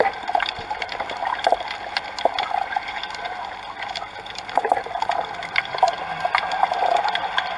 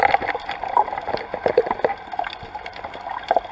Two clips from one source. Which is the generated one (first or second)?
first